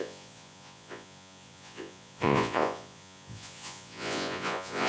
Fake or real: fake